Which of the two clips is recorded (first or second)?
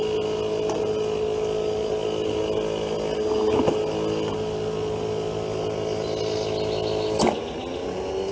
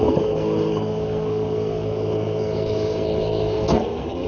first